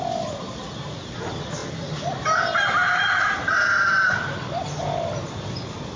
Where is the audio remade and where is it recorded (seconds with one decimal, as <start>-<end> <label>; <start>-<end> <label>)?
0.0-6.0 recorded